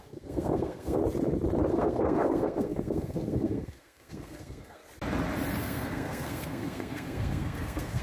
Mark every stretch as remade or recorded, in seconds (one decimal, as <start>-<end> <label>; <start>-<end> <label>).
0.0-1.0 remade; 1.0-1.7 recorded; 1.7-4.8 remade; 4.8-5.6 recorded; 5.6-8.0 remade